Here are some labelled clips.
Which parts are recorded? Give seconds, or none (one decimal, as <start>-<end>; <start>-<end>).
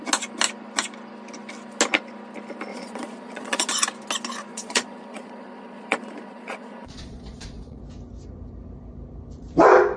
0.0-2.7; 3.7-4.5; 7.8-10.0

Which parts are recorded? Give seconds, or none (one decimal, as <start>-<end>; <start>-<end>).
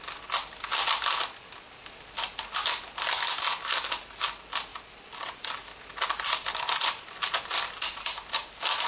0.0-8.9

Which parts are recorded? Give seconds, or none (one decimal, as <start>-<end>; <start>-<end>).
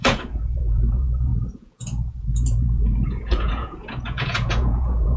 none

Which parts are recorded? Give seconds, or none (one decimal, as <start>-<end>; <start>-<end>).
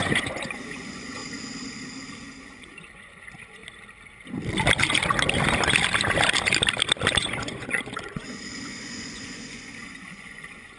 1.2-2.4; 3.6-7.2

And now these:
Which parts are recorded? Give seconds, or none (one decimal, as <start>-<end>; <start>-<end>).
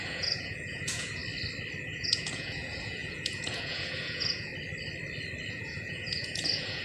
1.2-1.8; 4.5-5.5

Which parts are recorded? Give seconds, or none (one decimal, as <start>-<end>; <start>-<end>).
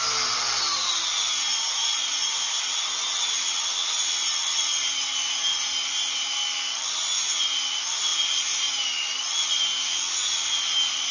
0.0-1.8; 2.6-11.1